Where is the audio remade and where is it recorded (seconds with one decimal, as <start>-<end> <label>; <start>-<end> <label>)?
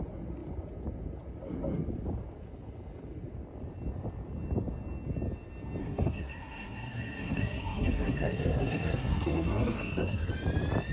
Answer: 0.0-5.8 recorded; 5.8-10.3 remade; 10.3-10.9 recorded